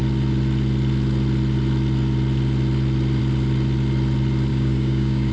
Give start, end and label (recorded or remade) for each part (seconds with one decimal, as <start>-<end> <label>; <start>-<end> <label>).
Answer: 0.0-4.5 recorded; 4.5-5.3 remade